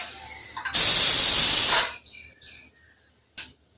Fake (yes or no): no